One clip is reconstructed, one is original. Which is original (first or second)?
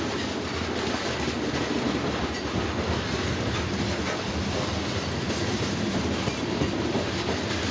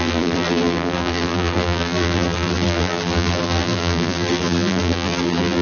first